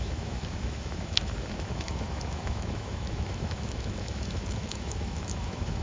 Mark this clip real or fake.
fake